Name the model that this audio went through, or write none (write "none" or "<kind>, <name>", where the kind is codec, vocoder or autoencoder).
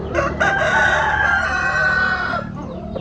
vocoder, BigVGAN v2